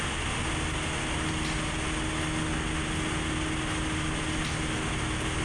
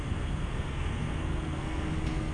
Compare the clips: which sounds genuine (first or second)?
first